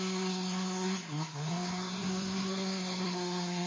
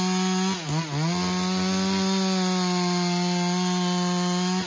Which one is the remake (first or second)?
first